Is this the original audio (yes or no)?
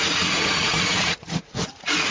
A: no